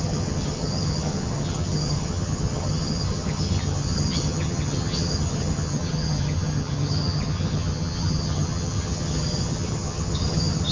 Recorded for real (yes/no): no